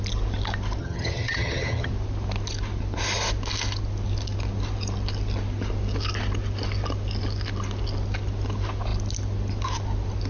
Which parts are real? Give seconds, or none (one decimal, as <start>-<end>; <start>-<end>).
0.0-0.8; 1.9-10.3